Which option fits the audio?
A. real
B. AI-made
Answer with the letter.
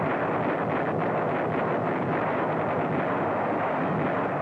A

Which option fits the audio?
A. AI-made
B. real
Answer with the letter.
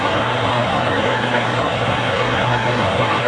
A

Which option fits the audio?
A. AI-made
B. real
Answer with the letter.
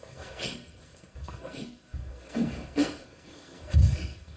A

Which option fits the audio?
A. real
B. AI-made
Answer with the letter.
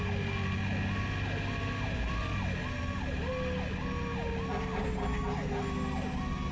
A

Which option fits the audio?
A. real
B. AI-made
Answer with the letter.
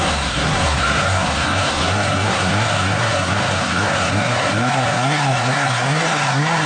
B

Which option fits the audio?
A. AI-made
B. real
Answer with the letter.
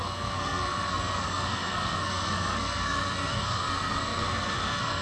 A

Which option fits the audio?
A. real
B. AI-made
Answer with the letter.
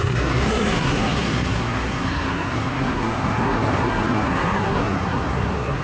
B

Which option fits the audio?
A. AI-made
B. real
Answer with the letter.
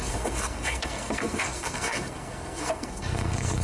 A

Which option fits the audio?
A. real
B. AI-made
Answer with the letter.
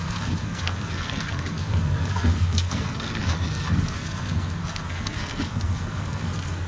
B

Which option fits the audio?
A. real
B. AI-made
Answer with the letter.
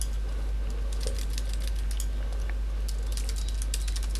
A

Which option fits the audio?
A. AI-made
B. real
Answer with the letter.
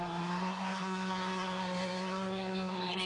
A